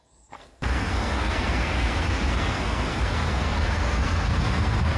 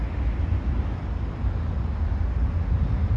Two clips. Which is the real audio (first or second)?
second